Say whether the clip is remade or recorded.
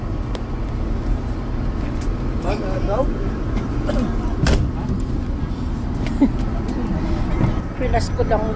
recorded